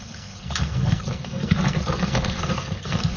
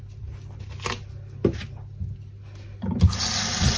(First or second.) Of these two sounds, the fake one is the first